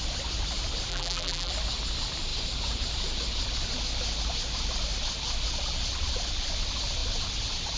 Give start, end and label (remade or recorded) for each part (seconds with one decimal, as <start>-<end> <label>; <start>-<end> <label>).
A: 0.0-0.9 recorded; 0.9-1.5 remade; 1.5-7.8 recorded